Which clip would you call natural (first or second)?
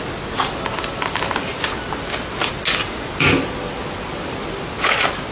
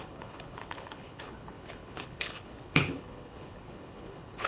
first